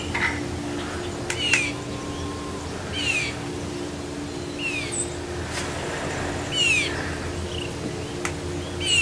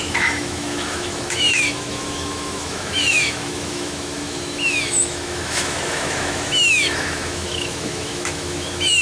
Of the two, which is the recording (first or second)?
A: first